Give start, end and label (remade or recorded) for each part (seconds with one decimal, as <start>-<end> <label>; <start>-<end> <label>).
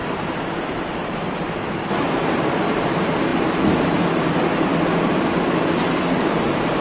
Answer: 0.0-0.6 recorded; 0.6-6.8 remade